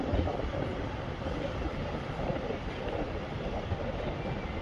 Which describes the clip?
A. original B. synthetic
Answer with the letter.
A